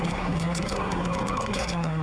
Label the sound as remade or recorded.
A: remade